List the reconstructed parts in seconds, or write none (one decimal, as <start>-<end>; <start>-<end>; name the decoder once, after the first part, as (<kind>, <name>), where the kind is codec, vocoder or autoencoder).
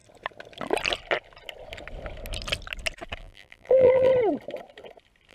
3.2-4.1 (vocoder, BigVGAN v2)